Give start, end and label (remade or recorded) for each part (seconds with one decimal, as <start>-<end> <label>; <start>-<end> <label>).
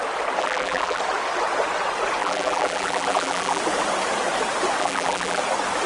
0.0-0.4 recorded; 0.4-1.0 remade; 1.0-2.2 recorded; 2.2-3.6 remade; 3.6-4.8 recorded; 4.8-5.4 remade; 5.4-5.9 recorded